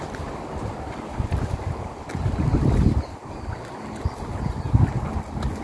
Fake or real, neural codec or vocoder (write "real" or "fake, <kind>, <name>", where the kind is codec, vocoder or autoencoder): real